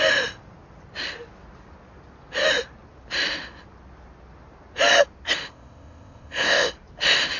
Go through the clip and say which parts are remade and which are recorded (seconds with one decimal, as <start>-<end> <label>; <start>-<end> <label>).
0.0-5.5 recorded; 5.5-6.7 remade; 6.7-7.4 recorded